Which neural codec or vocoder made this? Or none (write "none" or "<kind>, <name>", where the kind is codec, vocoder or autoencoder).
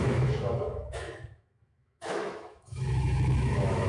autoencoder, DAC-VAE